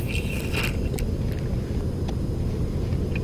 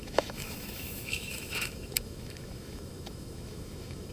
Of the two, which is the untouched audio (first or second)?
first